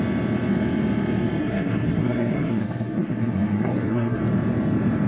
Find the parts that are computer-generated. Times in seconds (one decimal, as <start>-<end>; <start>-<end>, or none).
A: 1.4-4.2